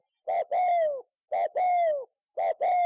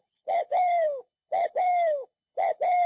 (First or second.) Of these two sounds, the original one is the first